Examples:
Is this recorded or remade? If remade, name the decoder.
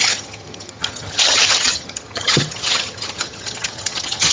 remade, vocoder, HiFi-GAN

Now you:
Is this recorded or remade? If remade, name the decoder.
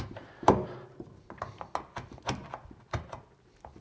recorded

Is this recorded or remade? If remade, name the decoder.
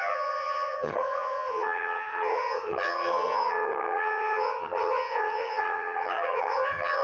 remade, vocoder, HiFi-GAN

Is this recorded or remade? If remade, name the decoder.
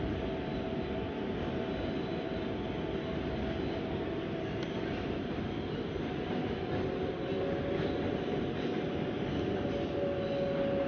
recorded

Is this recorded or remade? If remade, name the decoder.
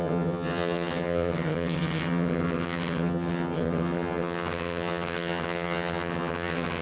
remade, vocoder, HiFi-GAN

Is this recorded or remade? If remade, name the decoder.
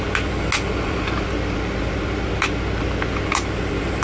recorded